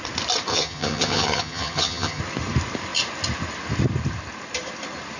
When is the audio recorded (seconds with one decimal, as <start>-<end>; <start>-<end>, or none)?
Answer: 0.0-0.5; 2.2-5.2